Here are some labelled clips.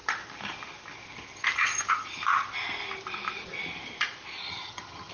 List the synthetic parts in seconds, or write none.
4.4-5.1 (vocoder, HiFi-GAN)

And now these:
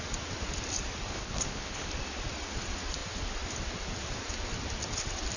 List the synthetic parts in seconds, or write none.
1.1-1.9 (codec, HILCodec)

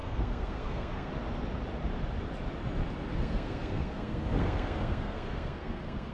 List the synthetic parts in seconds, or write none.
0.0-1.1 (codec, SNAC); 3.1-6.1

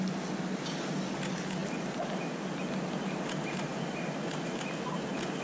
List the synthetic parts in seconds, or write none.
none

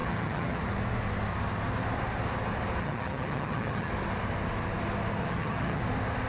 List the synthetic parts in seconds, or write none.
0.0-0.6 (vocoder, HiFi-GAN); 2.8-3.9; 5.2-5.8

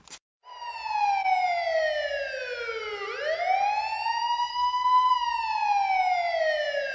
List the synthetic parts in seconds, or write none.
4.5-5.1 (codec, SNAC)

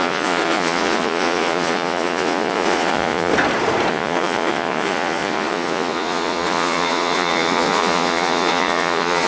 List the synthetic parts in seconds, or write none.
0.0-3.3 (vocoder, Vocos); 3.9-9.3

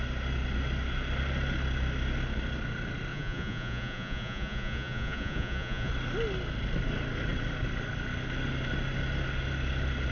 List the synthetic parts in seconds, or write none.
3.1-5.9 (vocoder, Vocos)